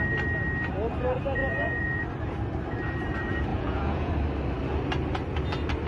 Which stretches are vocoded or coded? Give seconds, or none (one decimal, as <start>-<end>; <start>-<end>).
1.4-2.0; 3.5-4.1